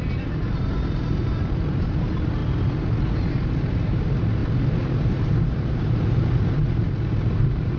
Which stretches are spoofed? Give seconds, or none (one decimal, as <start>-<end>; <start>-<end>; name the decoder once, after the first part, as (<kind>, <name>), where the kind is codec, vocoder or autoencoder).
0.0-2.4 (vocoder, BigVGAN v2); 3.3-7.8